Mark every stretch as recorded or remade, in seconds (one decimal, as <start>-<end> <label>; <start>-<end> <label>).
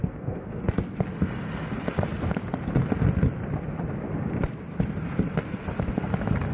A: 0.0-0.6 remade; 0.6-6.5 recorded